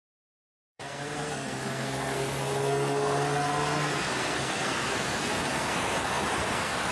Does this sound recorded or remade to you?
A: remade